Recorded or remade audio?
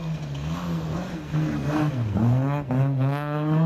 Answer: remade